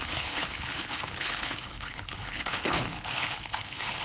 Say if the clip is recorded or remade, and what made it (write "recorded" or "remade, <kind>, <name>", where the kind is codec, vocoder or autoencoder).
remade, codec, HILCodec